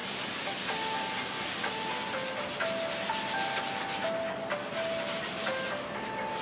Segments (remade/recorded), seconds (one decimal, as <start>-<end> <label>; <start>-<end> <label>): 0.0-6.4 recorded